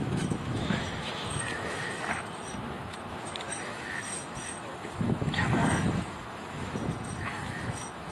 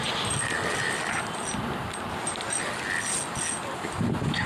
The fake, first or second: first